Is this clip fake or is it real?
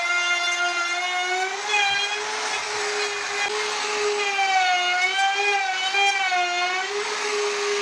real